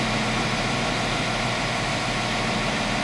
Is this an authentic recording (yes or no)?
no